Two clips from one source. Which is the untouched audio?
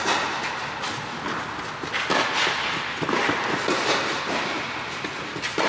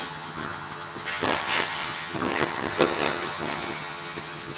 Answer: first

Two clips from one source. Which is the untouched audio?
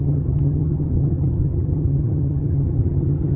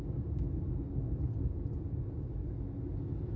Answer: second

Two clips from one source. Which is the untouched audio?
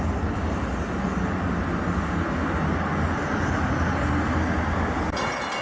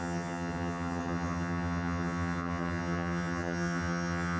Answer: first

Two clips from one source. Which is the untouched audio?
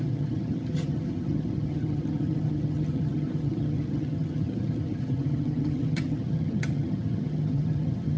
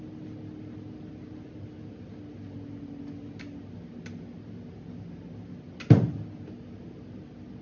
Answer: second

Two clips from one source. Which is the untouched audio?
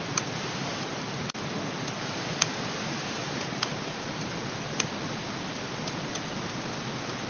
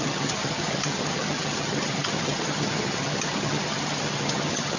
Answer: first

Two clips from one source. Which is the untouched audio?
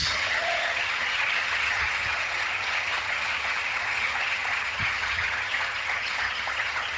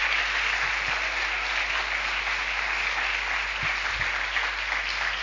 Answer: second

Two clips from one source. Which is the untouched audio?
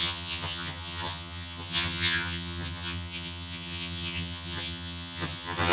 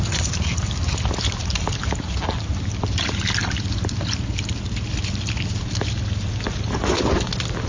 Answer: second